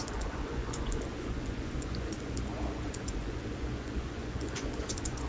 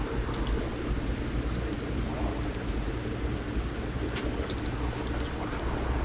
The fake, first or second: first